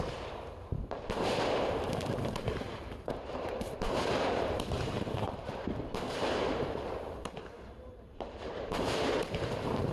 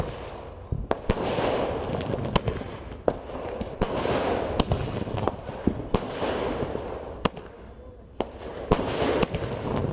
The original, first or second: second